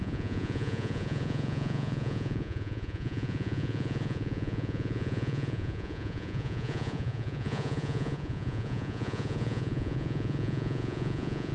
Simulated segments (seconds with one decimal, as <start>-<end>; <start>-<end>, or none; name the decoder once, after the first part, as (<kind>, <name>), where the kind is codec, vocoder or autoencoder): 0.0-11.5 (vocoder, Vocos)